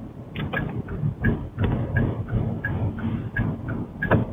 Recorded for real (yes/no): yes